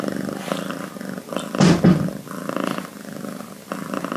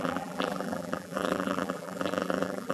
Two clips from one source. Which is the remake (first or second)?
second